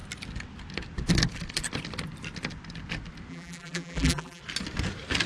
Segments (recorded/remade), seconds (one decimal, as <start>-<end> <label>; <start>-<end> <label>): 0.0-3.3 recorded; 3.3-4.4 remade; 4.4-5.3 recorded